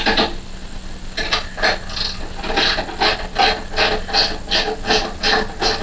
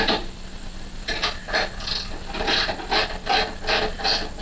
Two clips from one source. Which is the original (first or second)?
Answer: first